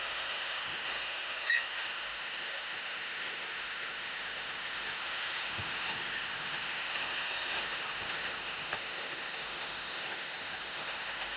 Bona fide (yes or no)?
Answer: no